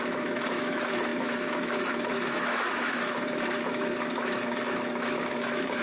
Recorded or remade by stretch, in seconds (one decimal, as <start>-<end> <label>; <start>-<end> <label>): 0.0-5.8 remade